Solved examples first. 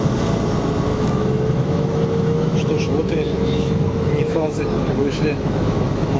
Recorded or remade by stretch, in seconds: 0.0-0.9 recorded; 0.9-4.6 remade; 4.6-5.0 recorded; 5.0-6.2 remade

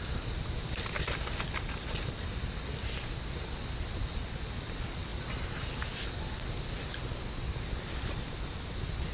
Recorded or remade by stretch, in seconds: 0.0-9.1 recorded

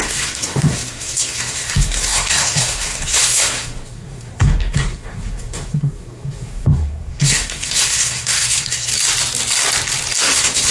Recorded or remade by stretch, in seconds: 0.0-8.9 remade; 8.9-10.2 recorded; 10.2-10.7 remade

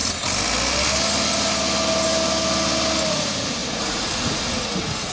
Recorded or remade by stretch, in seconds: 0.0-3.1 recorded; 3.1-5.1 remade

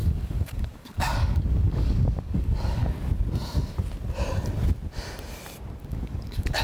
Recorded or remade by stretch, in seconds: 0.0-2.8 remade; 2.8-5.9 recorded; 5.9-6.6 remade